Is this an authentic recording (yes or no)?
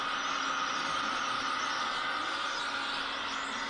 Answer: yes